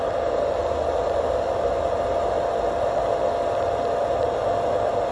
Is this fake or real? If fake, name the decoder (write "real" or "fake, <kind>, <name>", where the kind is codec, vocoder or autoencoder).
real